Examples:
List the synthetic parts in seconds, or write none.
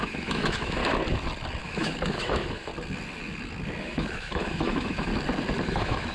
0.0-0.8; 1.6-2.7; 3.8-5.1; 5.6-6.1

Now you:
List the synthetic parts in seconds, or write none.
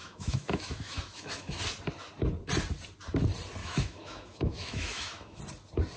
0.0-1.6; 3.6-5.4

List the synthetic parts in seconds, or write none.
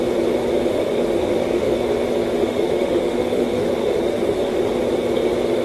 0.7-1.7; 2.4-4.7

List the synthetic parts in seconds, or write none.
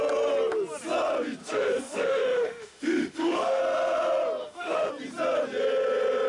1.4-3.6; 4.4-4.9